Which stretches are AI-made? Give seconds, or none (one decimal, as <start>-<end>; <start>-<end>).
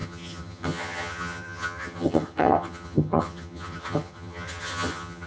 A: 0.0-5.3